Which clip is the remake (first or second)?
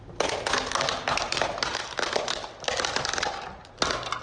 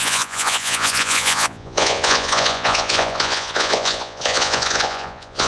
second